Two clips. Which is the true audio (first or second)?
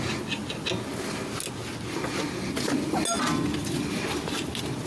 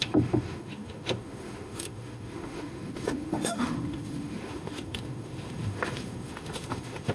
first